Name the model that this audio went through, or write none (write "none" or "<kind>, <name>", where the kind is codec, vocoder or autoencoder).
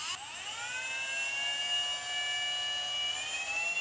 none